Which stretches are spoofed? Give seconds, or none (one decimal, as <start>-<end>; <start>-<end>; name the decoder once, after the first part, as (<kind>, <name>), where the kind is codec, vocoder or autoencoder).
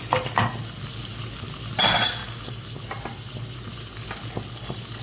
none